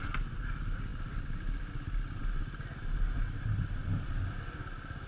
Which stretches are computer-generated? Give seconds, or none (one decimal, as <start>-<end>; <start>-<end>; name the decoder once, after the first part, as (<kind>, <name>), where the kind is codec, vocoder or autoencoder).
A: none